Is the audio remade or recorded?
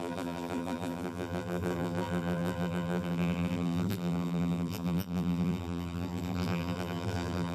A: remade